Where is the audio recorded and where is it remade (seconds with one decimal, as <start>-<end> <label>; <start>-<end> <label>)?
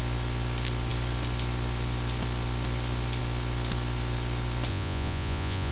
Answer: 0.0-4.7 recorded; 4.7-5.7 remade